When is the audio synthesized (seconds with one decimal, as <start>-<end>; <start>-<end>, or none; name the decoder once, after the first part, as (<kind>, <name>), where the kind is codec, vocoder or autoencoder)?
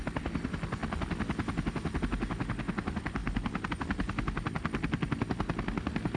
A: none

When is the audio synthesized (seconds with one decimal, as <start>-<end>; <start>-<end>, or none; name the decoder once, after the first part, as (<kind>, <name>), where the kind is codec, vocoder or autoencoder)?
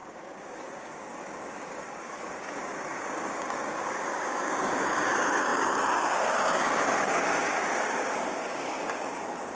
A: 0.0-9.5 (codec, DAC)